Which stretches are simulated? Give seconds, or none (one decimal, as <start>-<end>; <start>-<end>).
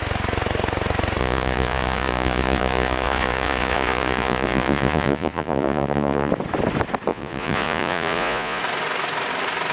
1.2-6.3; 7.1-8.6